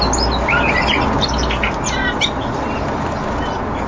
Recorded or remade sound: recorded